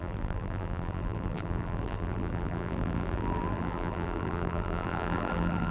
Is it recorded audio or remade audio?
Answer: remade